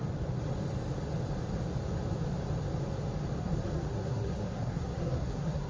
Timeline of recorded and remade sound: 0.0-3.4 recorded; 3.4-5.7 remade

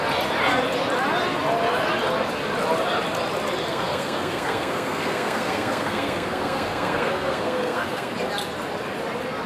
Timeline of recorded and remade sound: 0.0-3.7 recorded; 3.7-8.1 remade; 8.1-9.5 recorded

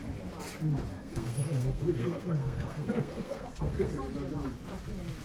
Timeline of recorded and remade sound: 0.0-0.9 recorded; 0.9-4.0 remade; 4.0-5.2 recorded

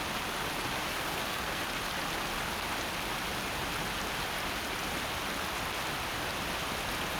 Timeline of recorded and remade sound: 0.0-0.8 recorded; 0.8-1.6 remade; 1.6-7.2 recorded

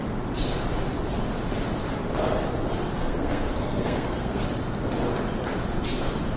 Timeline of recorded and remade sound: 0.0-3.0 recorded; 3.0-4.4 remade; 4.4-6.4 recorded